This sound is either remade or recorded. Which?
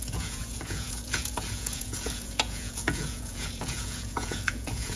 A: remade